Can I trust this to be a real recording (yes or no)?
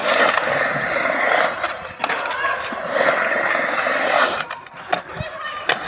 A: yes